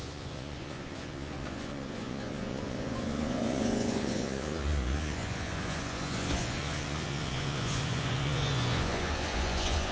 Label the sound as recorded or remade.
remade